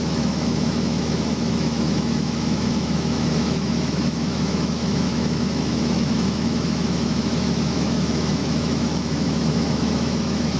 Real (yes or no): no